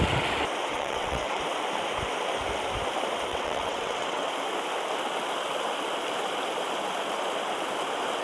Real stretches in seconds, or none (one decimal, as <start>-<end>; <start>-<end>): 0.0-0.7; 1.4-3.3; 4.3-8.2